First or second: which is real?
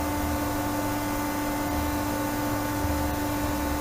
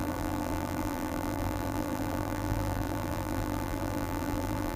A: first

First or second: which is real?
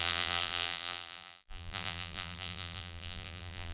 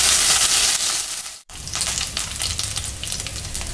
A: second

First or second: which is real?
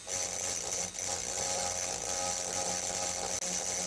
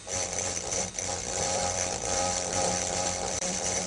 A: first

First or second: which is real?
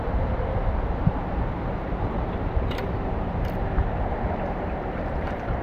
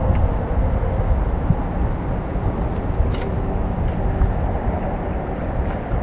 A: second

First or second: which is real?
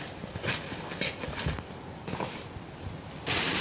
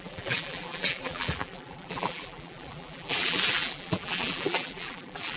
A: first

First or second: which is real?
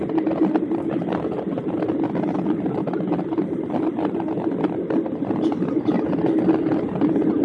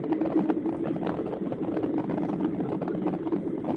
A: first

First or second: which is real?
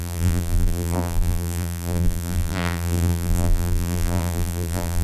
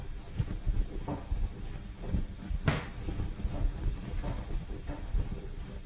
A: second